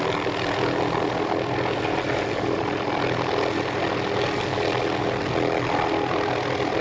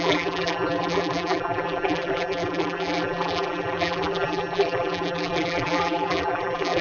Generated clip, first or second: second